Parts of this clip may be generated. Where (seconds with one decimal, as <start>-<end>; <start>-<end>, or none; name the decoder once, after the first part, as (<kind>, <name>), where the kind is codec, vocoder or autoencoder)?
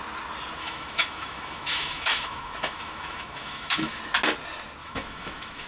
0.6-4.0 (autoencoder, DAC-VAE); 4.8-5.7